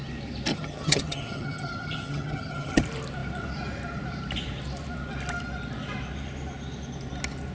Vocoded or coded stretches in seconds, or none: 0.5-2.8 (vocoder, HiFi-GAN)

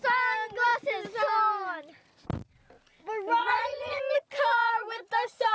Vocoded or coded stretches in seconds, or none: 3.4-4.0 (vocoder, HiFi-GAN)

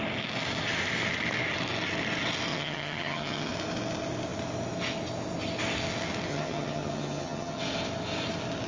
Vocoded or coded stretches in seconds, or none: 2.5-3.5 (vocoder, HiFi-GAN); 6.3-7.6

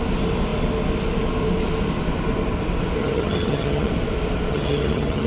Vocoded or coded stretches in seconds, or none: 3.0-3.9 (vocoder, HiFi-GAN); 4.5-5.3